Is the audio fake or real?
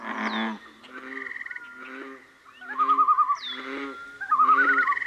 real